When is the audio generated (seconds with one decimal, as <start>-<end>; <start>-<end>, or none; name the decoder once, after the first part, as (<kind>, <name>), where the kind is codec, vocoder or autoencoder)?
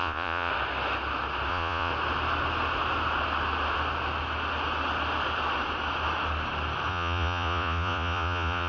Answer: 0.0-0.5 (vocoder, Vocos); 1.5-1.9; 6.9-8.7